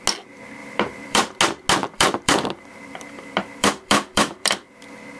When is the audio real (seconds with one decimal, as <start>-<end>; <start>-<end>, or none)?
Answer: 0.0-0.6; 1.4-1.8; 4.7-5.2